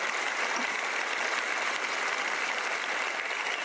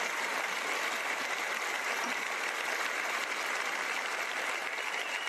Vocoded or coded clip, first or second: first